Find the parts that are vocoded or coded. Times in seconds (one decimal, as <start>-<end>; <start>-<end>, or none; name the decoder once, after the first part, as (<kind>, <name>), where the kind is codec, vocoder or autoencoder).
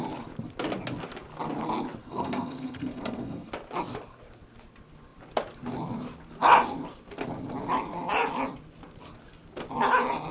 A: 2.0-3.5 (codec, SNAC)